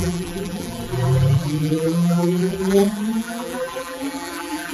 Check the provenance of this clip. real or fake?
fake